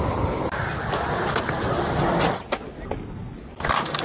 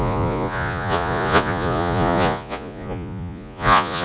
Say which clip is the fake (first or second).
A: second